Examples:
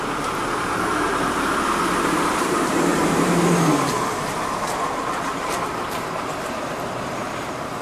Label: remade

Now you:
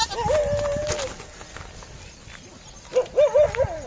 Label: recorded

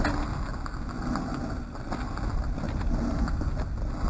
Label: recorded